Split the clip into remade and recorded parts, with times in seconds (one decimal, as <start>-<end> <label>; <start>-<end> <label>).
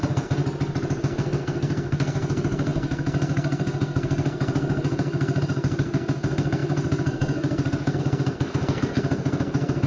0.0-0.4 remade; 0.4-1.0 recorded; 1.0-9.9 remade